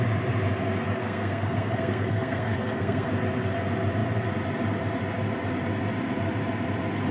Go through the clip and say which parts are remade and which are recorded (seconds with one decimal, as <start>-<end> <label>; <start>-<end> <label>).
0.0-1.0 recorded; 1.0-3.1 remade; 3.1-7.1 recorded